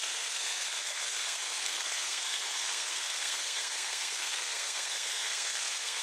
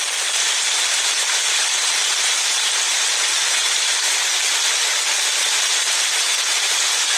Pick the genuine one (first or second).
second